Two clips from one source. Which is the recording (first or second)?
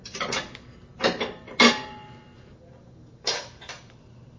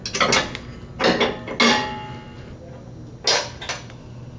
second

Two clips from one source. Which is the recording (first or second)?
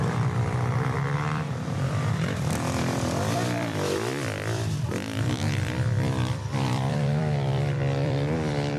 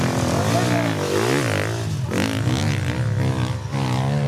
second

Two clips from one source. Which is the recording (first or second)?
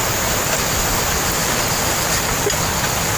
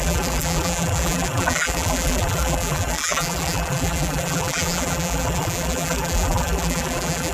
first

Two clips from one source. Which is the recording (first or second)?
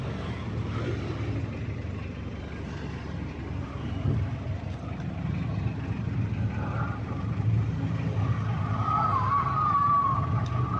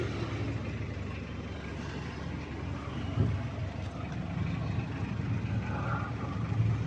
second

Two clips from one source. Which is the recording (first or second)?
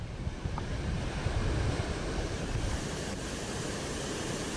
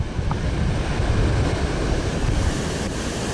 second